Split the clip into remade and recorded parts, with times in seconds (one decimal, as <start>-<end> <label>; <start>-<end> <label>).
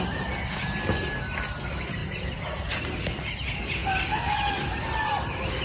0.0-5.6 recorded